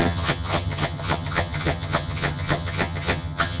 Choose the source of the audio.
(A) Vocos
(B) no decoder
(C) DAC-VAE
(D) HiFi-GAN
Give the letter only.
D